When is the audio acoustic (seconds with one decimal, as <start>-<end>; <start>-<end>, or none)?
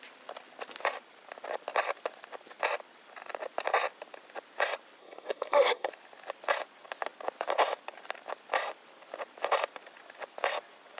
0.0-5.0; 5.9-11.0